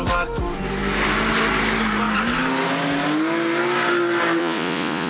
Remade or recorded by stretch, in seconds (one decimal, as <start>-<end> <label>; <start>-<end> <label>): 0.0-4.4 recorded; 4.4-5.1 remade